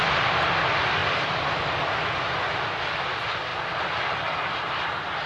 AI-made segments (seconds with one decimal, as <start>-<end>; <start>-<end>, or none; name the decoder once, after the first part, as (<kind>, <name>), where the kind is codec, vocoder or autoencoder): none